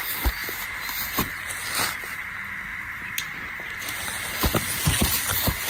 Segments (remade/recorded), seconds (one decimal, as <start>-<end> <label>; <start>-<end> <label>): 0.0-5.7 recorded